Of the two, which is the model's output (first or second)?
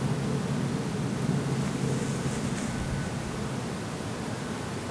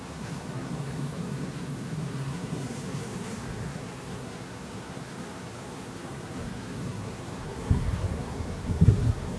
second